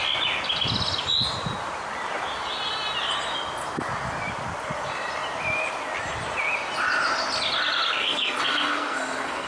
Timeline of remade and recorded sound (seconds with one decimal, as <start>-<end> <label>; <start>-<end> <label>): 0.0-8.0 recorded; 8.0-9.5 remade